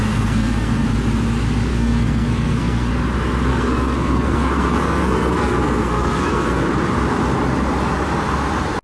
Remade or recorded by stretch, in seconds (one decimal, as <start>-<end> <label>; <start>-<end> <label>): 0.0-0.9 remade; 0.9-1.7 recorded; 1.7-2.9 remade; 2.9-3.5 recorded; 3.5-6.7 remade; 6.7-8.8 recorded